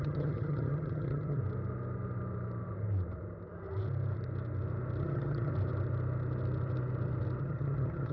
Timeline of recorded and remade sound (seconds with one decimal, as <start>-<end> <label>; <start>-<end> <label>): 0.0-1.4 remade; 1.4-5.0 recorded; 5.0-5.5 remade; 5.5-7.4 recorded; 7.4-8.1 remade